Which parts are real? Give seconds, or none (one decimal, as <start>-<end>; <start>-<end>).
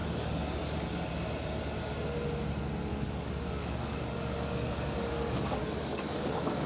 1.1-2.9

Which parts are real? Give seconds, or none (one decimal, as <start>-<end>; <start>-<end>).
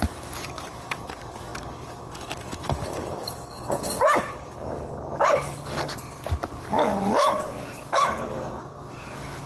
5.9-6.6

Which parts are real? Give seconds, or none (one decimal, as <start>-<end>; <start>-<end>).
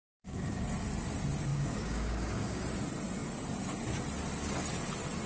0.6-1.5; 2.6-5.3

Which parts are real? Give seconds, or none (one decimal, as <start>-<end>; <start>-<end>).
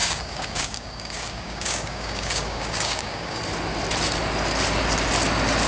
3.4-5.7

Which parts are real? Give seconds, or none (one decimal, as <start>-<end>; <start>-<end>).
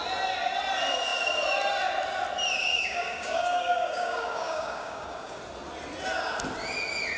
0.0-2.6; 5.4-7.2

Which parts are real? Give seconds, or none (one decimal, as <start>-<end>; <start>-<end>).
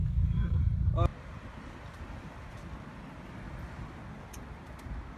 0.6-5.2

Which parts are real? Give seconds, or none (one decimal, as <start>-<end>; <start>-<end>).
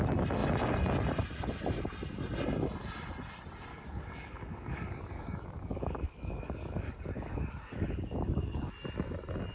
0.0-3.7; 8.7-9.5